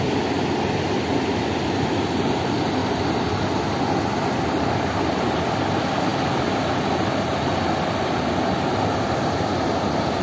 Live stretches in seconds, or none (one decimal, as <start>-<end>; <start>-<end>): 0.0-10.2